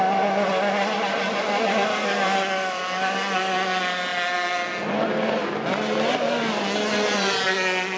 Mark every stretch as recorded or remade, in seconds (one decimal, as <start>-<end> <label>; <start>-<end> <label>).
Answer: 0.0-8.0 recorded